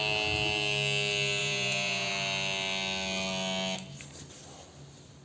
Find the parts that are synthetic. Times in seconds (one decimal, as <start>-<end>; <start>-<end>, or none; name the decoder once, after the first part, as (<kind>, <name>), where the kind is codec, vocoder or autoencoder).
1.4-2.1 (vocoder, Vocos)